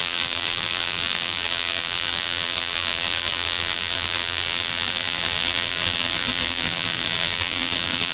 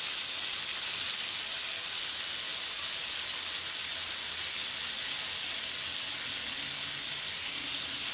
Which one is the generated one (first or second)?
first